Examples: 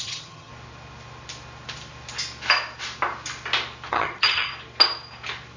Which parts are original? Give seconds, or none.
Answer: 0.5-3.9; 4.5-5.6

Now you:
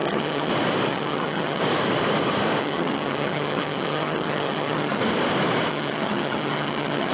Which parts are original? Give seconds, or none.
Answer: 0.5-0.9; 1.6-2.6; 5.0-5.7

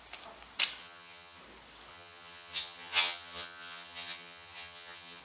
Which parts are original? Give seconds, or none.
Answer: 0.0-0.8; 1.4-1.9

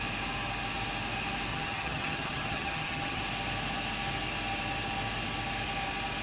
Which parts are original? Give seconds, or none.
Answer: 0.0-1.5; 3.2-6.2